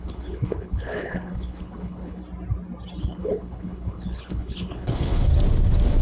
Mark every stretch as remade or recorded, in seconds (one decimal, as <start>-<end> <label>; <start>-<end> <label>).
0.0-2.2 remade; 2.2-3.0 recorded; 3.0-5.3 remade; 5.3-6.0 recorded